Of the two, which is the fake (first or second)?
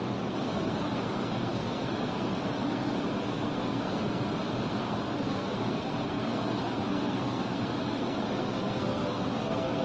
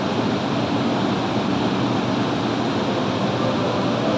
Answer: first